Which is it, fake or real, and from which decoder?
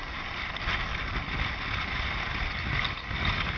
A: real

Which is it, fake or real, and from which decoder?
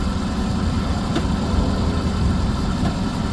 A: real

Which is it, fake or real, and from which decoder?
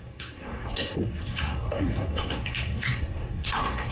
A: fake, codec, SNAC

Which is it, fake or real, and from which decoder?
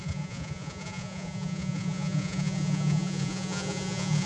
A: fake, vocoder, Vocos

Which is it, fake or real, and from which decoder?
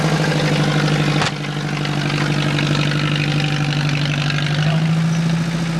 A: real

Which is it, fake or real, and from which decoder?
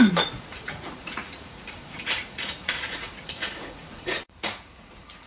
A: fake, vocoder, Vocos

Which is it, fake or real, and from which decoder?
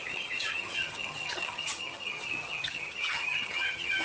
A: fake, vocoder, HiFi-GAN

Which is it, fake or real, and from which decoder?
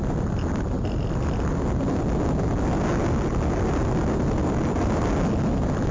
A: real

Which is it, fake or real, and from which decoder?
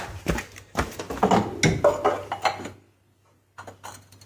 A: real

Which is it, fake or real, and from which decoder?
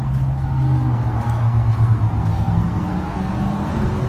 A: fake, codec, SNAC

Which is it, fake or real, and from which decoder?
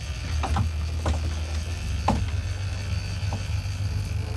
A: real